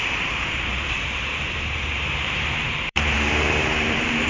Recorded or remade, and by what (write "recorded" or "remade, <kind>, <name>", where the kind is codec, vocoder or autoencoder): remade, vocoder, BigVGAN v2